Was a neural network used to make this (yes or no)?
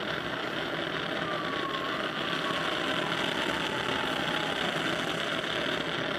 no